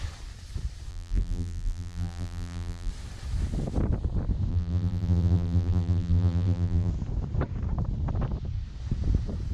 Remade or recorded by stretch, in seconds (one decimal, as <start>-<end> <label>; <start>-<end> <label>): 0.0-0.9 recorded; 0.9-2.9 remade; 2.9-4.5 recorded; 4.5-6.9 remade; 6.9-9.5 recorded